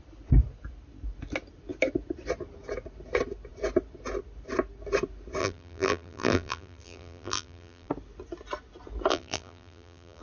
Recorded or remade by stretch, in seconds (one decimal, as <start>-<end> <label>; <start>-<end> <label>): 0.0-5.4 recorded; 5.4-7.9 remade; 7.9-9.1 recorded; 9.1-10.2 remade